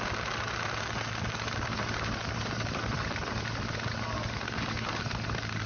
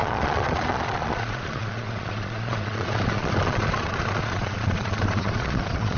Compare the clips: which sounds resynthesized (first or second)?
second